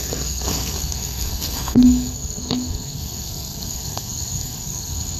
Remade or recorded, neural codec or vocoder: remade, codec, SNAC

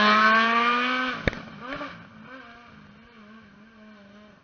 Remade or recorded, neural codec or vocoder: recorded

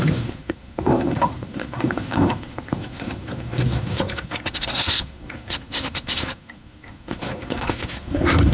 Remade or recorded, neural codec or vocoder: remade, codec, SNAC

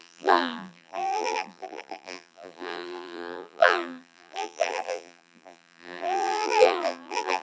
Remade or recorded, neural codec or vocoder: remade, vocoder, BigVGAN v2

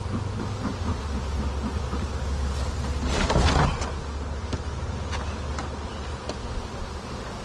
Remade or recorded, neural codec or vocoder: recorded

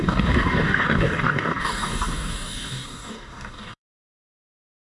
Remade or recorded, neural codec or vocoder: remade, codec, DAC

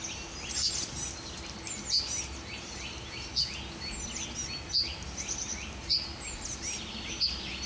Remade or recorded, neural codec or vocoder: recorded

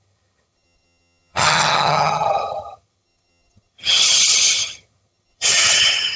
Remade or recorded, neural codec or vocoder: remade, vocoder, HiFi-GAN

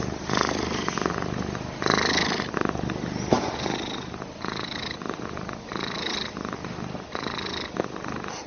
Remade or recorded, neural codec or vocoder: recorded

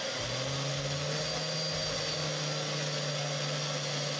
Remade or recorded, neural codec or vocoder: recorded